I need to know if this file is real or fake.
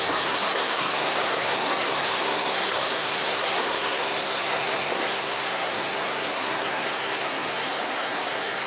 fake